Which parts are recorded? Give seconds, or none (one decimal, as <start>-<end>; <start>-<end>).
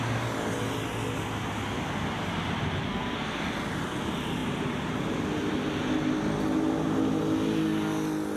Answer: 0.0-2.9; 3.4-8.4